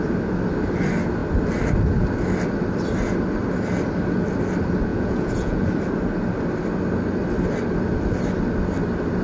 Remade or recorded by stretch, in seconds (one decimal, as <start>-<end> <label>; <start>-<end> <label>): 0.0-4.9 recorded; 4.9-5.7 remade; 5.7-9.2 recorded